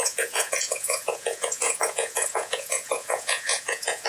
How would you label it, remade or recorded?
remade